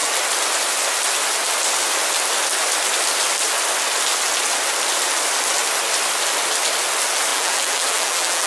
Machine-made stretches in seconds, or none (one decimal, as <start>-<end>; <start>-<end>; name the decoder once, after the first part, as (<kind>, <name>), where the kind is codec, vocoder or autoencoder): 7.3-8.5 (vocoder, BigVGAN v2)